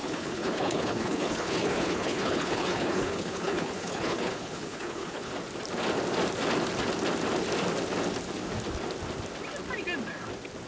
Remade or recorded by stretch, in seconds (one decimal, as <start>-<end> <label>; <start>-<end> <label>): 0.0-5.3 remade; 5.3-10.7 recorded